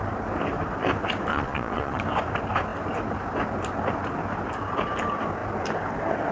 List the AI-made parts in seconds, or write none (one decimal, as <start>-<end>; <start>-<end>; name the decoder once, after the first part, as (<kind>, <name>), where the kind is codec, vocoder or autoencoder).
1.3-2.0 (vocoder, Vocos)

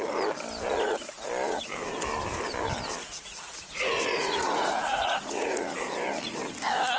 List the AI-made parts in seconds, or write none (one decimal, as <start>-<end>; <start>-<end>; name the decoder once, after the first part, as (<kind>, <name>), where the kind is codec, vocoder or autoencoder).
3.0-5.6 (vocoder, Vocos)

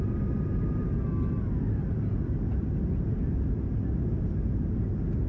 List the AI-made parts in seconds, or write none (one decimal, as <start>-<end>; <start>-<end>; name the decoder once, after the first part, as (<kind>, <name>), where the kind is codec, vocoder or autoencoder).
none

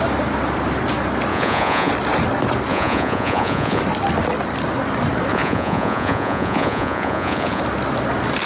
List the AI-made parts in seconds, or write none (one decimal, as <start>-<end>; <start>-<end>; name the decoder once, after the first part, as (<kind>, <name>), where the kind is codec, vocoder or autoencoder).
1.3-1.9 (vocoder, Vocos); 2.7-3.8; 5.3-7.6

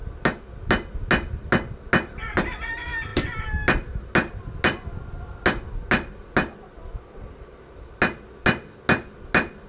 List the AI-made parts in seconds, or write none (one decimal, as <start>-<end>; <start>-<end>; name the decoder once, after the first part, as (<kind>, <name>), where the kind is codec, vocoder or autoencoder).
none

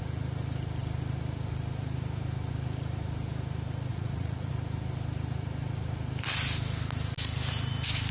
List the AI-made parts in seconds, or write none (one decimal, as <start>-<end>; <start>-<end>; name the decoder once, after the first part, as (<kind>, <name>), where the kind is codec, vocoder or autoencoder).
3.9-4.5 (vocoder, Vocos)

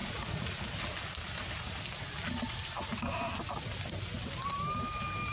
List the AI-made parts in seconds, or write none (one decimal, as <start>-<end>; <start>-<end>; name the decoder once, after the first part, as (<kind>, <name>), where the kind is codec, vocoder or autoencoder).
0.0-0.6 (vocoder, Vocos)

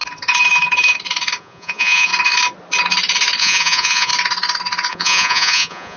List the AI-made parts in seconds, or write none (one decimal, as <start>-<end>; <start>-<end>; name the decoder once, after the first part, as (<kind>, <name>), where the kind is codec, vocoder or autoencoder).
1.4-2.1 (vocoder, Vocos); 3.4-4.1; 4.9-6.0